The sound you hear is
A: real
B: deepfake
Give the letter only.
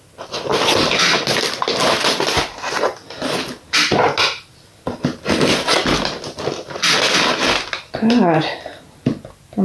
A